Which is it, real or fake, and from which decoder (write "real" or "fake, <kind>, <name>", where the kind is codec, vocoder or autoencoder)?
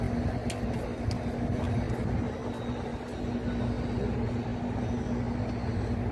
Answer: real